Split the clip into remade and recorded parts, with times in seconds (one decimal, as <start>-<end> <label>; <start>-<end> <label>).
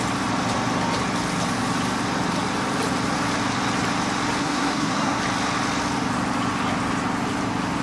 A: 0.0-4.4 recorded; 4.4-5.2 remade; 5.2-7.8 recorded